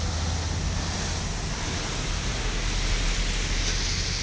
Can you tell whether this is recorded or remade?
recorded